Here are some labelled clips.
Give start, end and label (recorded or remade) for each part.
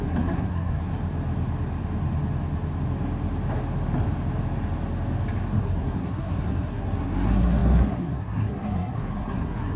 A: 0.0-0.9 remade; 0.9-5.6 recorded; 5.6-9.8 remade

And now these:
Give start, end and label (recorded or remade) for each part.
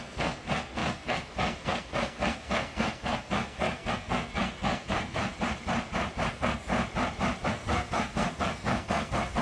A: 0.0-5.3 remade; 5.3-6.3 recorded; 6.3-6.7 remade; 6.7-7.5 recorded; 7.5-9.4 remade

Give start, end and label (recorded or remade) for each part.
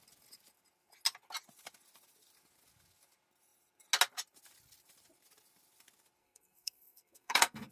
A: 0.0-6.2 recorded; 6.2-7.7 remade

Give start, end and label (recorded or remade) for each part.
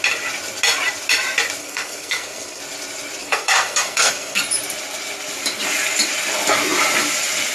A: 0.0-1.6 recorded; 1.6-2.6 remade; 2.6-3.2 recorded; 3.2-4.4 remade; 4.4-7.5 recorded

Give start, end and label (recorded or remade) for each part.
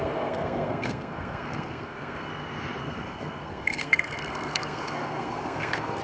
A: 0.0-2.3 remade; 2.3-2.8 recorded; 2.8-6.0 remade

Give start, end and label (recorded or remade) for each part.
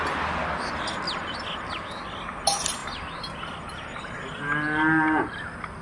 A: 0.0-5.8 recorded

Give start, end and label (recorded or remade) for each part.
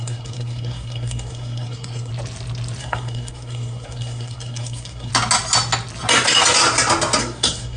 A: 0.0-2.1 remade; 2.1-2.8 recorded; 2.8-5.1 remade; 5.1-7.2 recorded; 7.2-7.8 remade